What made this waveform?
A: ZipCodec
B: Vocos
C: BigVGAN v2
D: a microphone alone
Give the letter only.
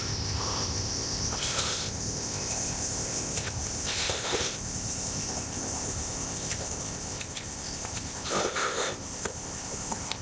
A